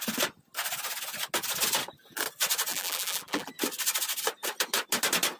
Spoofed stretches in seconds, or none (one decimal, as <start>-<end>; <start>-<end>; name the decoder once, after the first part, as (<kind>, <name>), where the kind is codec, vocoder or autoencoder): 2.7-3.5 (vocoder, BigVGAN v2)